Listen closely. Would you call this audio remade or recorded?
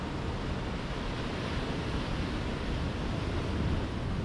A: recorded